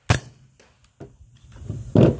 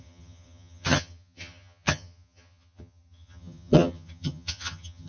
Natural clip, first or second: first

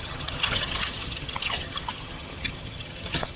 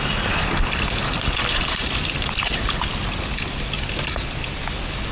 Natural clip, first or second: second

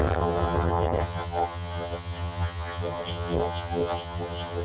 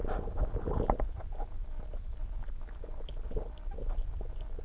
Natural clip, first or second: second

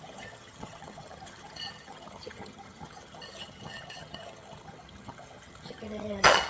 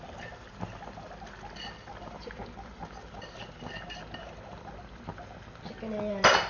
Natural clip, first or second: second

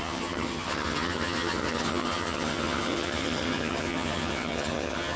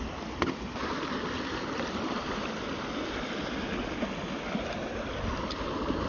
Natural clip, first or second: second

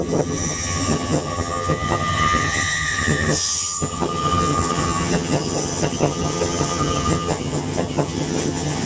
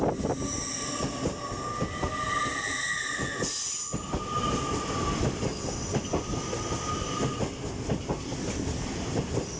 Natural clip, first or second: second